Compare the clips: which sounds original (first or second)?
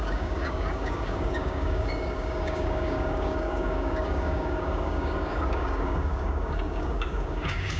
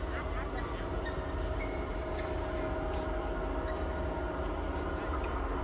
second